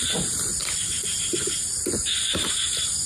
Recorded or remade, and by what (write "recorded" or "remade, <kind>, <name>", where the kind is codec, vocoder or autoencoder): recorded